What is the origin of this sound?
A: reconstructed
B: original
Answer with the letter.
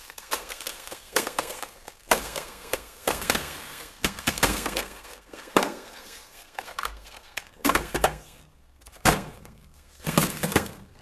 A